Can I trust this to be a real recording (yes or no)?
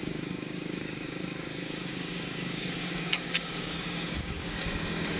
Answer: no